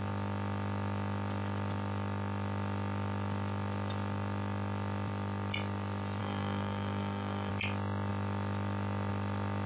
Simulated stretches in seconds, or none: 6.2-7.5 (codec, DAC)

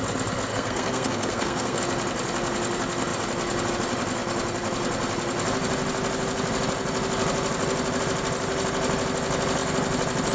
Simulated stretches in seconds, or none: 0.5-1.8 (codec, SNAC)

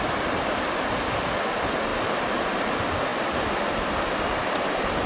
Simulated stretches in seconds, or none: none

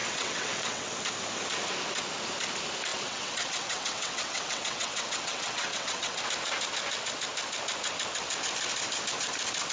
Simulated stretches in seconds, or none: 0.0-0.9 (vocoder, WaveNeXt); 2.9-6.2

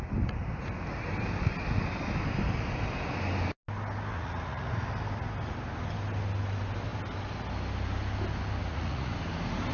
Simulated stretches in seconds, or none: 4.1-4.9 (vocoder, Vocos); 8.6-9.1

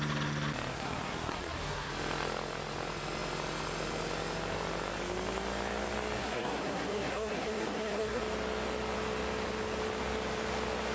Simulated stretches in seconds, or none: 0.7-1.9 (codec, SNAC); 6.2-8.2

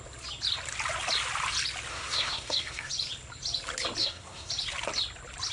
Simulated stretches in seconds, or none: 1.9-2.9 (codec, SNAC); 4.0-4.5